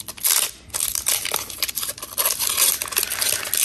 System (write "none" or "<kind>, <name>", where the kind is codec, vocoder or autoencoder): none